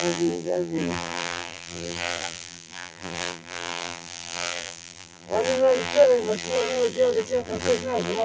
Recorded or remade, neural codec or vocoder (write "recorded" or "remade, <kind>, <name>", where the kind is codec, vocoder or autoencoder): remade, vocoder, BigVGAN v2